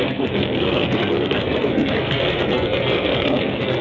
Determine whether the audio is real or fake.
fake